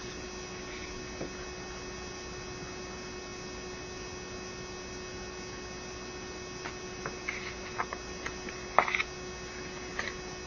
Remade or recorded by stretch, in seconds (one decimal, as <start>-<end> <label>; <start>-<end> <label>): 0.0-10.5 recorded